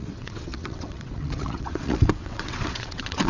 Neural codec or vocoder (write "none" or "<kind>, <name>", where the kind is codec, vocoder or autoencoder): vocoder, WaveNeXt